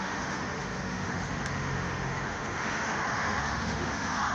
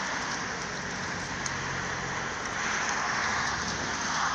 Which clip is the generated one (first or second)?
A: first